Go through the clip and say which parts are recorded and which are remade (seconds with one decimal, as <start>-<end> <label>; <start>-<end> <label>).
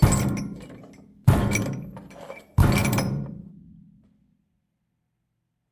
0.0-1.4 recorded; 1.4-2.4 remade; 2.4-2.8 recorded; 2.8-5.7 remade